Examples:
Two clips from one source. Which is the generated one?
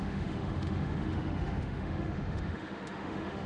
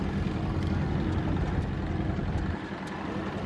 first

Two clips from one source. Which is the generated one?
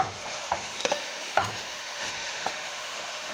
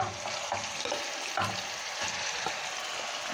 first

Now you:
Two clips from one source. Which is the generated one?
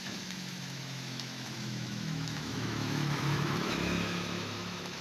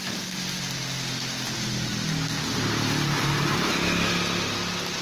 first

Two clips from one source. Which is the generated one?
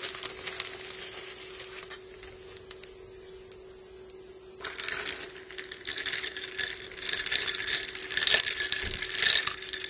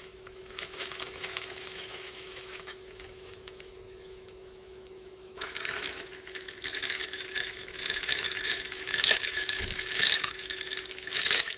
second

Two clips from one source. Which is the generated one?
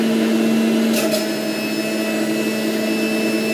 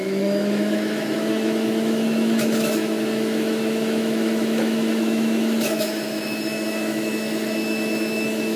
second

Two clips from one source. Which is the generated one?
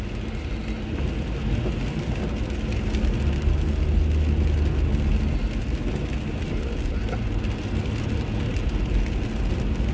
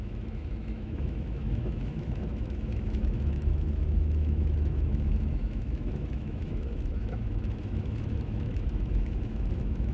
second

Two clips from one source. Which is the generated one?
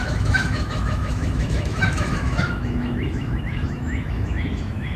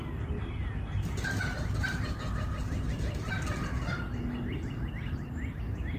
first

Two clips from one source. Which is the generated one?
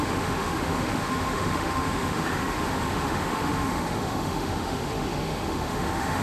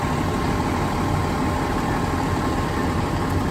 first